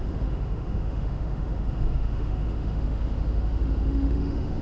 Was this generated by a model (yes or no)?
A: yes